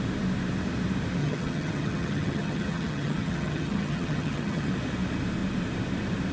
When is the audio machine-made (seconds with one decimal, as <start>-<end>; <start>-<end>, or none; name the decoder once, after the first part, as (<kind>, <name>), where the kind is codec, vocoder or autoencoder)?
1.2-4.7 (vocoder, HiFi-GAN)